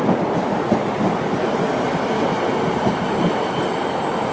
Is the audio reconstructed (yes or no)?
no